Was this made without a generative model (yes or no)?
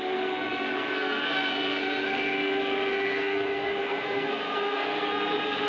no